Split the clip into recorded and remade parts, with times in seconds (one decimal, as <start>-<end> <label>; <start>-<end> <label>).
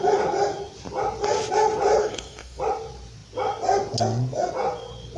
0.0-2.0 recorded; 2.0-2.6 remade; 2.6-5.2 recorded